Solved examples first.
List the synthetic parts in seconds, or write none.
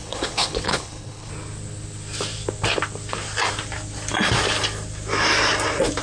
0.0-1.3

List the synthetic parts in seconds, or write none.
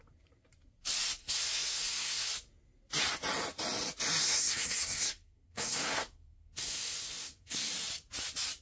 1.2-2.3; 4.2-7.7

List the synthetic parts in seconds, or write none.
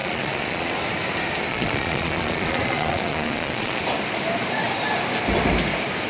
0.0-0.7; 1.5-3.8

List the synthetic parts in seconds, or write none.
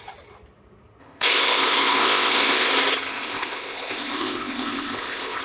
1.0-2.7; 3.1-5.4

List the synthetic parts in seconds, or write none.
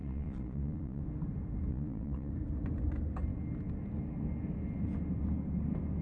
0.0-1.0; 1.7-2.3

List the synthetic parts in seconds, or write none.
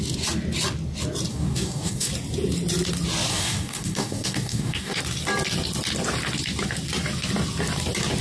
1.3-2.1; 3.3-5.0